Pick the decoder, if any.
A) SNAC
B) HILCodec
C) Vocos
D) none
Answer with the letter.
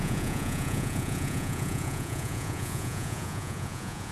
C